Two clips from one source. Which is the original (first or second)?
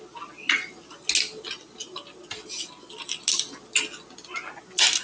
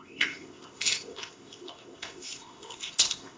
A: first